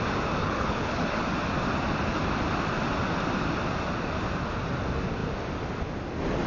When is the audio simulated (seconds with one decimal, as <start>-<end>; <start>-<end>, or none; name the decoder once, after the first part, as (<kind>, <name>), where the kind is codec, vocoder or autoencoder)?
0.4-1.2 (codec, HILCodec)